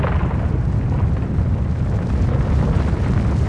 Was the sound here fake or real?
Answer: real